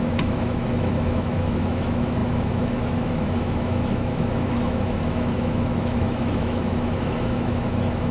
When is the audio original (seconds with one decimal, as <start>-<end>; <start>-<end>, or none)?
none